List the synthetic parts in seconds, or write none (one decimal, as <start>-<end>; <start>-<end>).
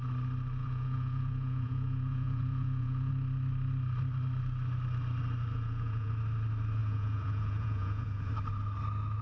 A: 0.6-3.1; 5.5-6.1; 6.8-8.3